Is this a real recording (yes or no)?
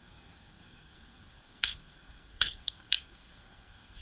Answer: no